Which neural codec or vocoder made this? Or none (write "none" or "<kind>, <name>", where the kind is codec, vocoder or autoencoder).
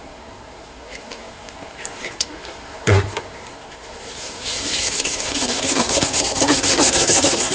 codec, SNAC